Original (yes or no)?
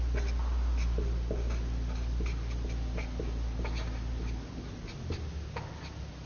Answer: yes